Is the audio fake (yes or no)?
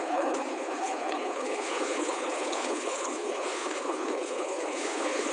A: yes